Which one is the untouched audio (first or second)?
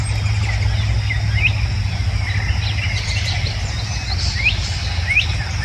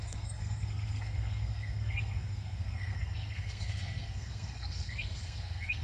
first